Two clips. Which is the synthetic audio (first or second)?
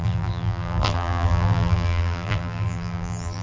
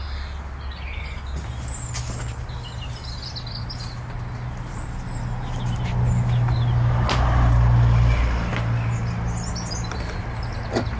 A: first